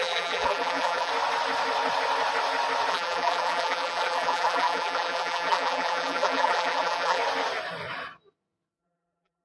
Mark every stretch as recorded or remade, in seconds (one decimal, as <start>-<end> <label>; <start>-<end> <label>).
0.0-1.1 remade; 1.1-2.9 recorded; 2.9-7.2 remade; 7.2-8.8 recorded; 8.8-9.4 remade